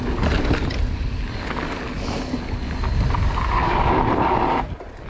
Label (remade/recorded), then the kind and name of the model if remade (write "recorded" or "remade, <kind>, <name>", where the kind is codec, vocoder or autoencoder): recorded